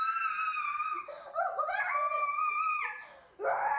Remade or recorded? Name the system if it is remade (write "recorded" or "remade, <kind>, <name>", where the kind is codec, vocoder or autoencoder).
recorded